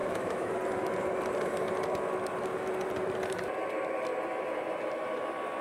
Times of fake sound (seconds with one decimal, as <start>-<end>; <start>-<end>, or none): 0.0-0.5